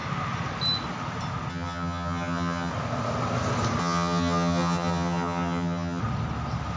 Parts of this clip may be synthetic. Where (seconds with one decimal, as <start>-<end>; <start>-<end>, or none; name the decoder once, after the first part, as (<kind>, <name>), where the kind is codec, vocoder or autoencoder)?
1.5-2.7 (vocoder, HiFi-GAN); 3.8-6.0